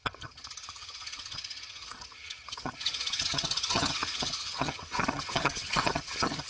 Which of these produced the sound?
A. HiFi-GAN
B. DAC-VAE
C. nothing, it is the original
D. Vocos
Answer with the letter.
A